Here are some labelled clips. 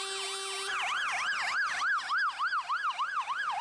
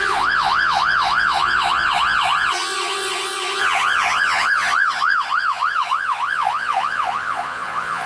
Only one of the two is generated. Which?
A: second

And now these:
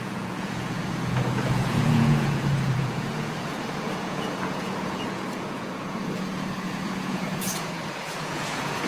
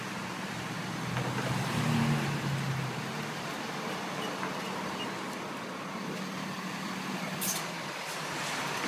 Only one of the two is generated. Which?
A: first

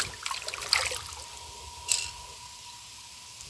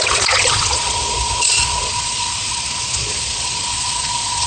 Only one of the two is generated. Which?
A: second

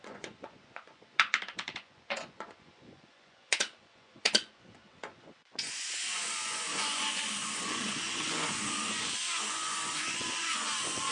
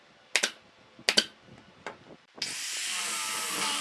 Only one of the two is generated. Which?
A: first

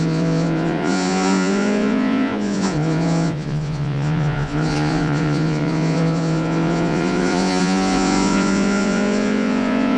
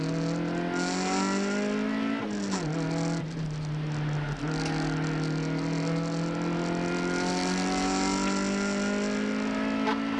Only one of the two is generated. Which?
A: first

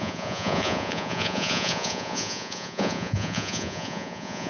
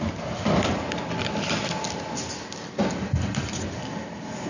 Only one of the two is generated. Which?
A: first